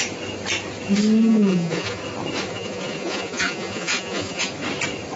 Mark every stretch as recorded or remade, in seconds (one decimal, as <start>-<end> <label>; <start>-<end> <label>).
0.0-1.2 recorded; 1.2-2.0 remade; 2.0-2.5 recorded; 2.5-4.5 remade; 4.5-5.2 recorded

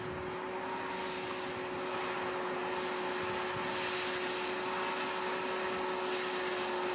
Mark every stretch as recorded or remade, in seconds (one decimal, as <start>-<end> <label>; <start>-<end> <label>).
0.0-6.9 recorded